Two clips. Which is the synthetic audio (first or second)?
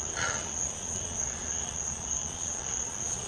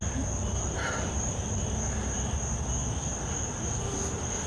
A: first